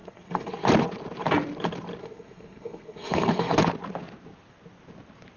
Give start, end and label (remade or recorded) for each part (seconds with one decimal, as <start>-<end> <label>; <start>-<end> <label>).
0.0-0.5 remade; 0.5-2.0 recorded; 2.0-3.5 remade; 3.5-5.4 recorded